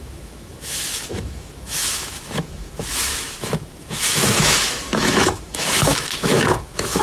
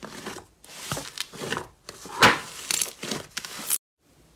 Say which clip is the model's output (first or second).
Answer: first